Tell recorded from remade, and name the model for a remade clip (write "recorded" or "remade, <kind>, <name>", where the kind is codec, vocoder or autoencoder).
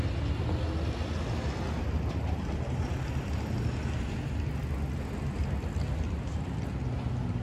recorded